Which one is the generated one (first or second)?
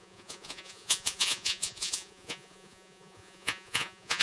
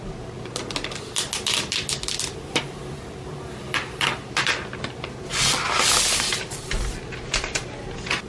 first